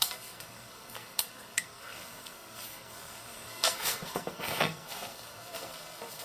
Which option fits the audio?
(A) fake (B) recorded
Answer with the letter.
A